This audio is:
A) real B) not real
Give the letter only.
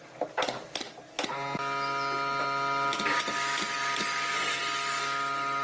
A